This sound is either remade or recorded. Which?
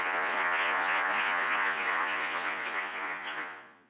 remade